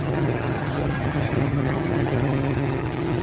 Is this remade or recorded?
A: remade